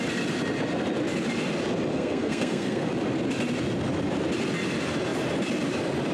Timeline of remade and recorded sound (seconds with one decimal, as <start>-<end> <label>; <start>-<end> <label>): 0.0-1.9 recorded; 1.9-2.9 remade; 2.9-6.1 recorded